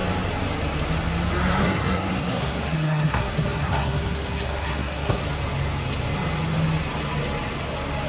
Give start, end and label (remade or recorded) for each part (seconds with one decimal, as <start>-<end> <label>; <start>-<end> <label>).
0.0-1.6 recorded; 1.6-5.2 remade; 5.2-8.1 recorded